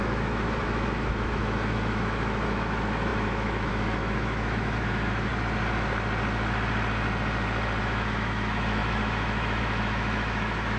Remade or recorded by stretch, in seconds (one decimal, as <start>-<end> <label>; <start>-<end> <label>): 0.0-5.3 remade; 5.3-7.8 recorded; 7.8-10.8 remade